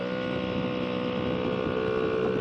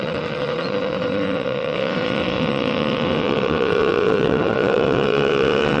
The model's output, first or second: second